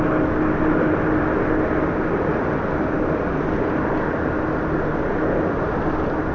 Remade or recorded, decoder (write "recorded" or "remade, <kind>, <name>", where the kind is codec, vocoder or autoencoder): recorded